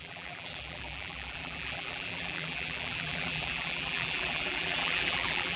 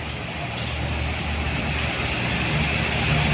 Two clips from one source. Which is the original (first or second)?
second